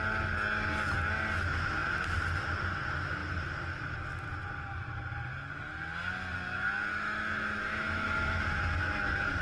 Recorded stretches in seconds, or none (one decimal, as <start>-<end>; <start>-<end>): 0.0-6.9; 8.4-9.4